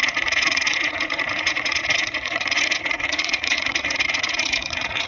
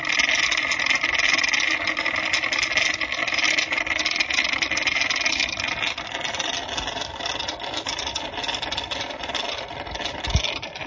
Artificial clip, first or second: first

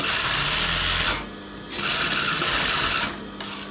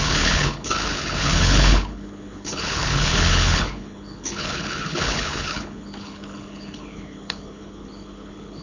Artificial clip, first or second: second